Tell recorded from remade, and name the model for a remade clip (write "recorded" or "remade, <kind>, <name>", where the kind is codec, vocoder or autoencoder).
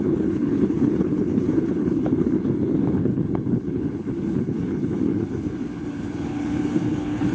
remade, codec, HILCodec